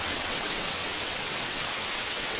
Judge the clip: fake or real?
fake